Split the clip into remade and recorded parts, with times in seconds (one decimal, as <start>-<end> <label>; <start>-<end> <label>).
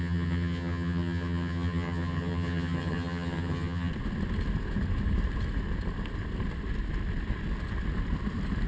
0.0-3.9 remade; 3.9-8.7 recorded